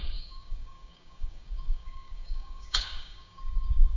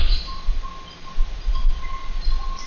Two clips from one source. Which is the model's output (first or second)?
first